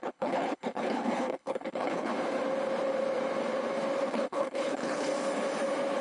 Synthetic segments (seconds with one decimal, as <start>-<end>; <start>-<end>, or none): 0.0-2.1; 4.1-5.1